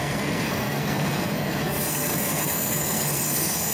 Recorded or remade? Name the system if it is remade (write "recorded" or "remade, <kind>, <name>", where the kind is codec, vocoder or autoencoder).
remade, codec, SNAC